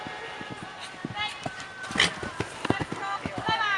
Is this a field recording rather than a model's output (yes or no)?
yes